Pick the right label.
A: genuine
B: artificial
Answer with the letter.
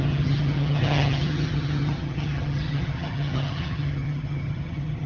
B